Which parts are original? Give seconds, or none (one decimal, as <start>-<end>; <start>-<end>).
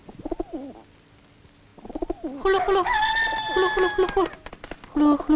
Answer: 0.0-5.4